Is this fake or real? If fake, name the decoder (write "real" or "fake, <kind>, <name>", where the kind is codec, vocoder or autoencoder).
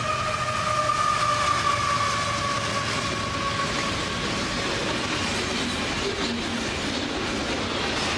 real